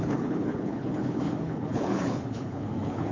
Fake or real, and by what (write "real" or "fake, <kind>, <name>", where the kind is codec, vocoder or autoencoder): fake, codec, HILCodec